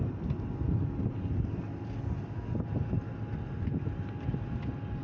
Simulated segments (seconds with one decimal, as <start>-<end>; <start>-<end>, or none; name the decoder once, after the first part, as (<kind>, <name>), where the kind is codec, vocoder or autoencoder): none